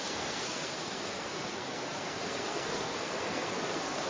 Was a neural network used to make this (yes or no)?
yes